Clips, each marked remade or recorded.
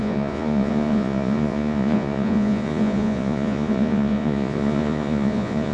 remade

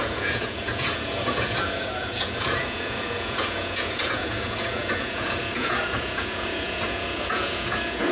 remade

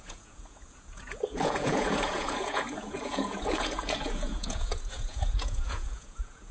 remade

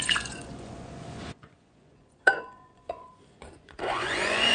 remade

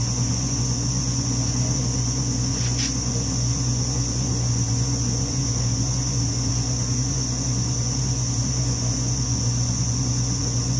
remade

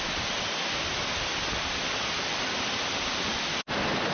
recorded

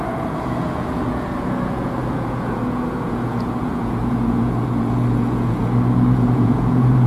remade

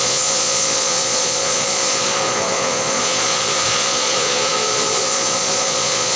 remade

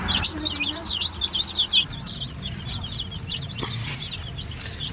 recorded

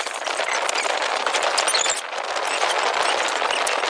recorded